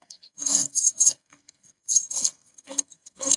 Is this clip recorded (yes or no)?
no